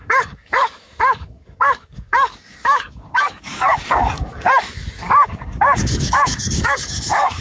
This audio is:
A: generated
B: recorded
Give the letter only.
A